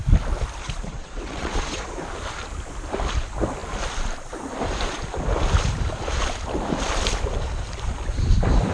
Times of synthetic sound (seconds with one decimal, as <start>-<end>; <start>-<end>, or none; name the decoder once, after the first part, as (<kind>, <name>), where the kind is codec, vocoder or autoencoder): 0.6-2.0 (vocoder, Vocos)